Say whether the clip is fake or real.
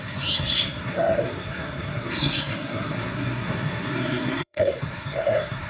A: fake